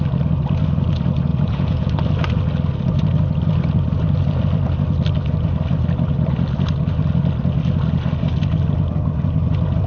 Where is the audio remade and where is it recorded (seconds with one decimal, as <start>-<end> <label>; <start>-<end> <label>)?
0.0-1.3 recorded; 1.3-1.9 remade; 1.9-9.9 recorded